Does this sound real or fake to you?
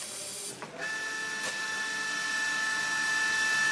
real